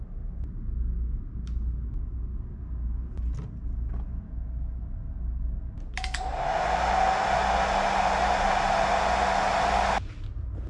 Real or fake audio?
real